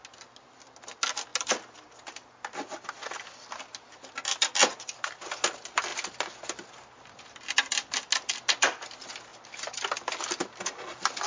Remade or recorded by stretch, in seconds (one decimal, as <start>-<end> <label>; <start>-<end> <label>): 0.0-11.3 recorded